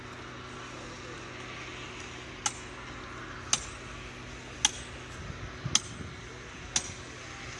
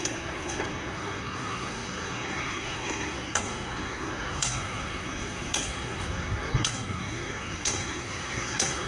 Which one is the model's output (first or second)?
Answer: second